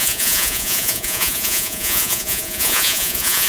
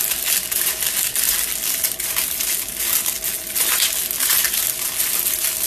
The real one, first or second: second